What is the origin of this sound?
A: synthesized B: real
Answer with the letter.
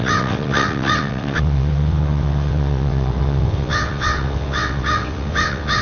A